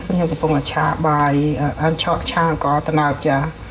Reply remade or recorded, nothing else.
remade